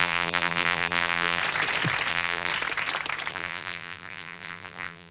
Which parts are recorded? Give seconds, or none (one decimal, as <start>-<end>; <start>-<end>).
1.4-2.1; 2.5-3.3

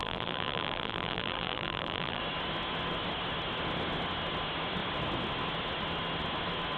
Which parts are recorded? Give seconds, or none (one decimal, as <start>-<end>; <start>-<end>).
2.2-6.8

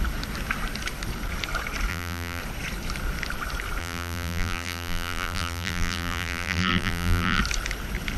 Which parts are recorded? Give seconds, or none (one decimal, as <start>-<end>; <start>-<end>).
0.0-1.9; 2.4-3.8; 7.4-8.2

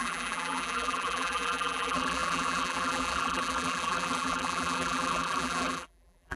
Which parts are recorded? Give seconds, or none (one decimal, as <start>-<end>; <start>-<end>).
none